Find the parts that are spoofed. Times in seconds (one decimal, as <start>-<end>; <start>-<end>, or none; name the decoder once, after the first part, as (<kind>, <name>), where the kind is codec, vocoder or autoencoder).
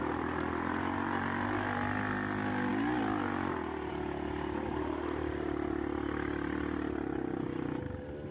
none